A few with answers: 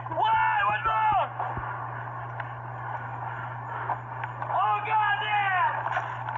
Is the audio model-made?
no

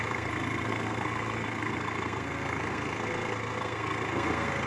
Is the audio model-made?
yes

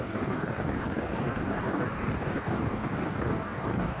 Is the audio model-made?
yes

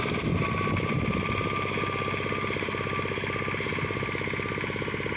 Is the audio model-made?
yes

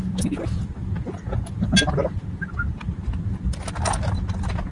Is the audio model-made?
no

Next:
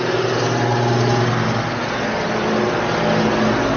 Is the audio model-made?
no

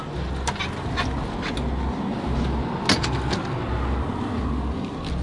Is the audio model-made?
no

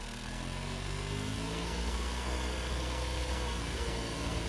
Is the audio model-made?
yes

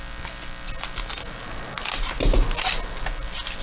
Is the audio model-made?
no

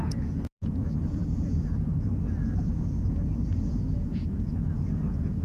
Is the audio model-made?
yes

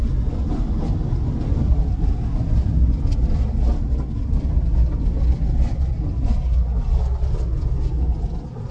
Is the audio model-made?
no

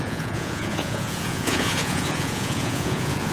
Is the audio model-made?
yes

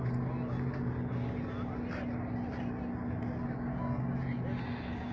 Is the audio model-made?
no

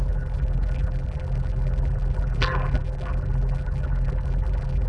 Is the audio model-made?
yes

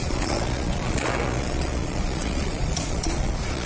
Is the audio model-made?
yes